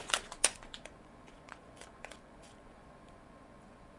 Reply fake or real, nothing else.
fake